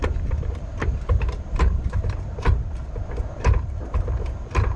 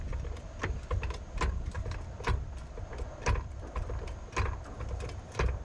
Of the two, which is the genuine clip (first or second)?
second